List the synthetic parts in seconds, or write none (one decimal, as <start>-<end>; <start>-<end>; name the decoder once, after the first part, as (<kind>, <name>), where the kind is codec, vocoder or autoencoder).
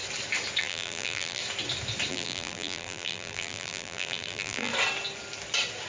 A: 0.6-1.4 (vocoder, BigVGAN v2); 2.1-4.7